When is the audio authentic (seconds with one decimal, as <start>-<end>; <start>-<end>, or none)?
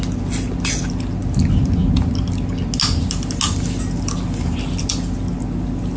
0.0-6.0